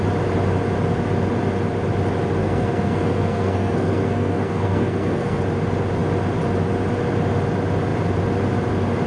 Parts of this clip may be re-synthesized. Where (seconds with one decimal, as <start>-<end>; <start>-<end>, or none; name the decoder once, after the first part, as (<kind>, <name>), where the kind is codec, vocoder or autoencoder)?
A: 2.4-5.4 (codec, SNAC)